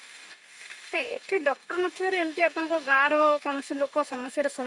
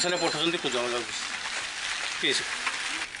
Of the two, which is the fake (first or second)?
first